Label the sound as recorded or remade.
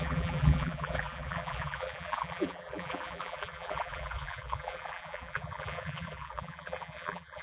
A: remade